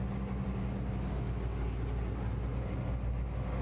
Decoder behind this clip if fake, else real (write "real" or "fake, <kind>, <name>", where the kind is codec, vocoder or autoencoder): real